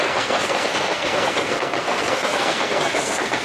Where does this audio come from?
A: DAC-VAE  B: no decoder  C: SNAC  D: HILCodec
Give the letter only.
C